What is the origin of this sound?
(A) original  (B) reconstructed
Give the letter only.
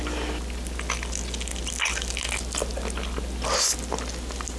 A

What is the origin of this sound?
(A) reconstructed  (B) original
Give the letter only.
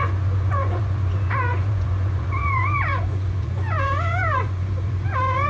A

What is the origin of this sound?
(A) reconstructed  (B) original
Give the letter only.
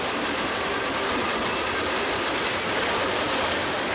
B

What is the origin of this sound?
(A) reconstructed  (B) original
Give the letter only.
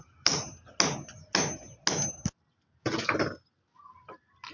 B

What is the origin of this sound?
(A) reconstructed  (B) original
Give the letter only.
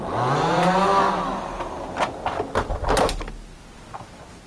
B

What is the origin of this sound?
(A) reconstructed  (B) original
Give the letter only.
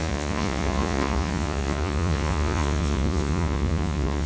A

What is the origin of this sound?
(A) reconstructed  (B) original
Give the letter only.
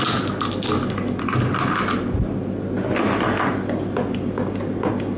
B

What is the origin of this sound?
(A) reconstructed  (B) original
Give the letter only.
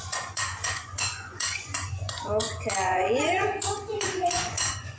A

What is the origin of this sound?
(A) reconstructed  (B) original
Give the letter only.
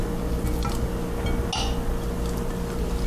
B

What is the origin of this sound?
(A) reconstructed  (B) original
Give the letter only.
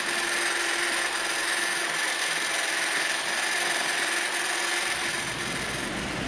B